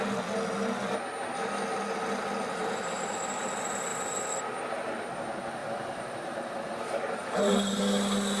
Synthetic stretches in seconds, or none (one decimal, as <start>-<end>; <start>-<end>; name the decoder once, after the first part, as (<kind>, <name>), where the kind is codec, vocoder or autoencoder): 2.6-3.1 (vocoder, BigVGAN v2); 5.6-7.8